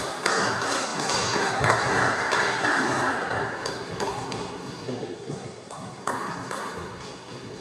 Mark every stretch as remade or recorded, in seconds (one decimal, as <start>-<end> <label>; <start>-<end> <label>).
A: 0.0-7.6 remade

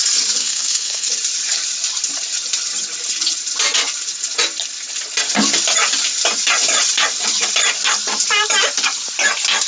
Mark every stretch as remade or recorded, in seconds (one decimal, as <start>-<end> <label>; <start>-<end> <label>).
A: 0.0-0.4 recorded; 0.4-1.1 remade; 1.1-9.7 recorded